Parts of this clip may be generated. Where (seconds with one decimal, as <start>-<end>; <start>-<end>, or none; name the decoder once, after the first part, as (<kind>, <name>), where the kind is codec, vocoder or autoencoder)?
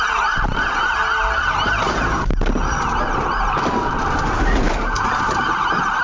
none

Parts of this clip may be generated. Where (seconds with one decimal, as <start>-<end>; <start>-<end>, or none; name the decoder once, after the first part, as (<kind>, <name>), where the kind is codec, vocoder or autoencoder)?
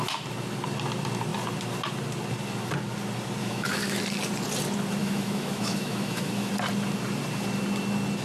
3.4-4.0 (autoencoder, DAC-VAE); 5.0-6.5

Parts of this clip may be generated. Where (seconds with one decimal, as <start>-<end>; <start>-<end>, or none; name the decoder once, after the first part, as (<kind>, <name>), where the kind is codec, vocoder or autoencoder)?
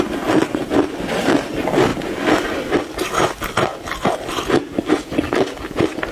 none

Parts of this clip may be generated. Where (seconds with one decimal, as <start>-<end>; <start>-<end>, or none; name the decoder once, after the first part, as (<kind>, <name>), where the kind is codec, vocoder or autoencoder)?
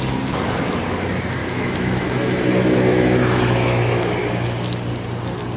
1.4-4.2 (autoencoder, DAC-VAE)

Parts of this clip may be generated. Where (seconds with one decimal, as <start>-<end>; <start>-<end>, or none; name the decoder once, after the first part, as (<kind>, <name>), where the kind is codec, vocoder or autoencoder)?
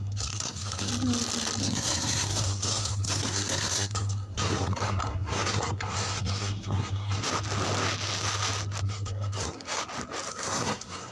0.0-0.9 (codec, SNAC); 1.6-7.2; 8.8-9.8; 10.3-11.1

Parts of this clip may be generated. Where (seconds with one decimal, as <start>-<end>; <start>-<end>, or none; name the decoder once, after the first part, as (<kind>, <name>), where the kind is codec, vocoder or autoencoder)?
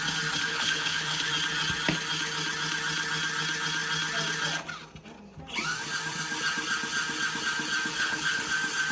0.5-1.3 (codec, HILCodec); 7.9-8.5